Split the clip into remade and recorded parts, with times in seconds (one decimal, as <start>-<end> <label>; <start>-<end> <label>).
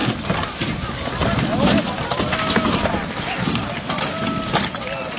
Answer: 0.0-5.2 recorded